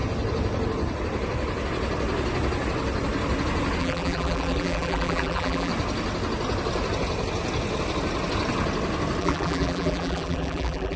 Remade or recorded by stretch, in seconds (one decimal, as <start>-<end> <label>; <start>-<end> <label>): 0.0-3.8 recorded; 3.8-5.7 remade; 5.7-9.2 recorded; 9.2-11.0 remade